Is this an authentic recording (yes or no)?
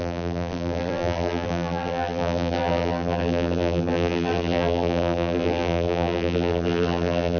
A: no